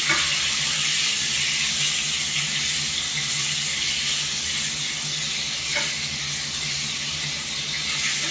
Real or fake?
real